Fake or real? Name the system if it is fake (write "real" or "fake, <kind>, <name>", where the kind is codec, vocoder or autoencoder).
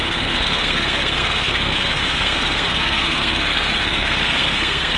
fake, codec, SNAC